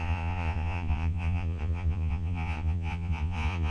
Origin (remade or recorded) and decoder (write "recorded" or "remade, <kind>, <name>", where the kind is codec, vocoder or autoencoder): remade, vocoder, Vocos